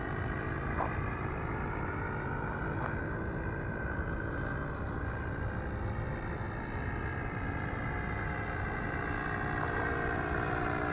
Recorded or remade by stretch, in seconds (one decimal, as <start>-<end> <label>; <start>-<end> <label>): 0.0-0.6 recorded; 0.6-1.9 remade; 1.9-10.9 recorded